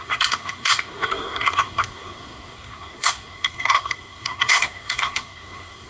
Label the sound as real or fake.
fake